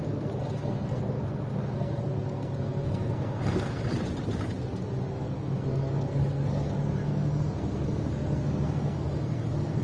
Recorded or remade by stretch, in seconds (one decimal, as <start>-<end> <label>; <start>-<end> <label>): 0.0-3.8 remade; 3.8-5.1 recorded; 5.1-9.8 remade

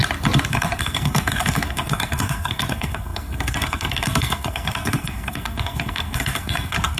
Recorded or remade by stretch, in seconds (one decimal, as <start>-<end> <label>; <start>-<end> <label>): 0.0-0.5 recorded; 0.5-7.0 remade

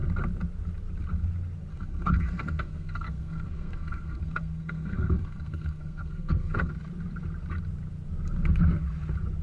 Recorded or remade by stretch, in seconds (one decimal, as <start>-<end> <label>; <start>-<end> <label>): 0.0-1.7 recorded; 1.7-6.7 remade; 6.7-9.4 recorded

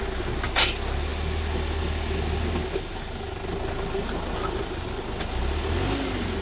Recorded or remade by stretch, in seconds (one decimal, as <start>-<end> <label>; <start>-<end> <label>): 0.0-6.4 recorded

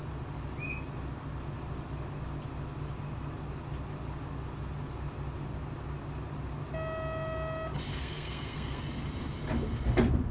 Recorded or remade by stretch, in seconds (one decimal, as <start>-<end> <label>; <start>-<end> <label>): 0.0-7.9 recorded; 7.9-8.8 remade; 8.8-10.3 recorded

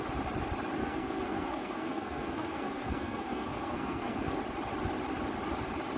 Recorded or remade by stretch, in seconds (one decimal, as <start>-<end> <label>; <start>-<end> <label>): 0.0-0.8 recorded; 0.8-4.4 remade; 4.4-6.0 recorded